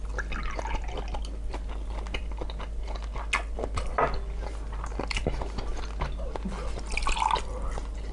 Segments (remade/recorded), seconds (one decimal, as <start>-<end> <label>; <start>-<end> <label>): 0.0-8.1 recorded